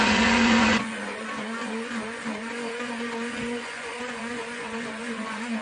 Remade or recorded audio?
remade